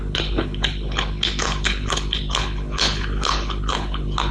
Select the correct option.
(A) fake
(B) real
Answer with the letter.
A